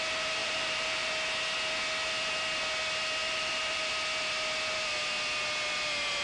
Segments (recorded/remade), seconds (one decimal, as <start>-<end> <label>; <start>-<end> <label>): 0.0-0.4 recorded; 0.4-1.1 remade; 1.1-3.2 recorded; 3.2-3.9 remade; 3.9-6.2 recorded